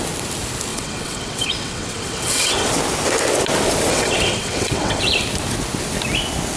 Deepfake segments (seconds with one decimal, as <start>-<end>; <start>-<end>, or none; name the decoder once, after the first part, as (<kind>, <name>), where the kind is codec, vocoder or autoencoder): 0.7-2.7 (vocoder, WaveNeXt); 3.9-5.1